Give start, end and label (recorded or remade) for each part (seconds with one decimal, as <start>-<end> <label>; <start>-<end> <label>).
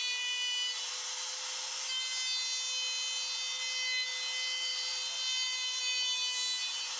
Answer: 0.0-0.9 remade; 0.9-4.7 recorded; 4.7-5.8 remade; 5.8-7.0 recorded